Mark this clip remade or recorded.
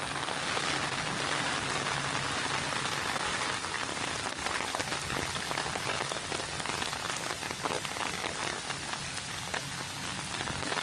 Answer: recorded